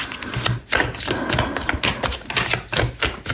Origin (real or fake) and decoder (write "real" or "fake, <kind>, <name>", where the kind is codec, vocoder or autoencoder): real